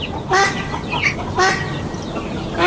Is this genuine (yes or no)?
yes